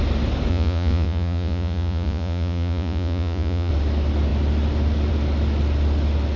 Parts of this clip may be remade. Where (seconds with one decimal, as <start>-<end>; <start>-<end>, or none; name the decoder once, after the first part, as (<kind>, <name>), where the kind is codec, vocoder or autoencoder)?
0.5-3.7 (vocoder, Vocos)